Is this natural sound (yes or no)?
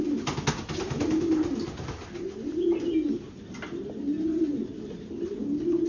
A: yes